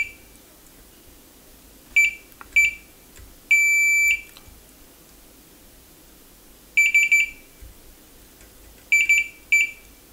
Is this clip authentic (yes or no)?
yes